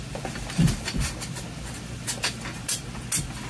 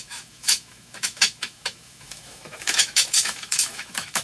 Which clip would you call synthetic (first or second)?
second